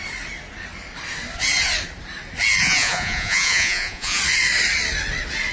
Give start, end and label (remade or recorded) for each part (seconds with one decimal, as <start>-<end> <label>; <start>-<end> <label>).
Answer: 0.0-2.6 recorded; 2.6-4.2 remade; 4.2-5.5 recorded